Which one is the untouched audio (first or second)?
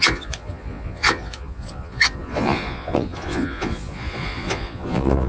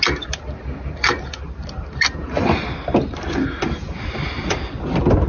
second